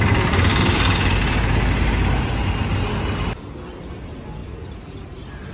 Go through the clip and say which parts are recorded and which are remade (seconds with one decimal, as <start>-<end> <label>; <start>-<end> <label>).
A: 0.0-0.5 recorded; 0.5-1.1 remade; 1.1-5.5 recorded